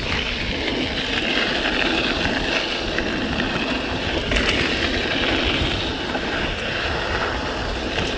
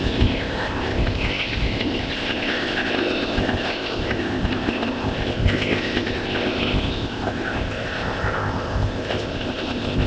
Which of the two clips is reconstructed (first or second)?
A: second